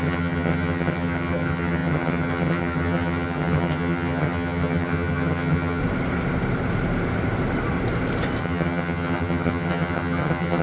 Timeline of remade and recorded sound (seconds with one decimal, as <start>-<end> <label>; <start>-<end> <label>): 0.0-5.8 remade; 5.8-8.4 recorded; 8.4-10.6 remade